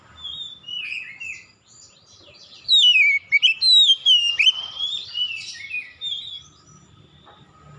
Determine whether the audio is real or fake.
real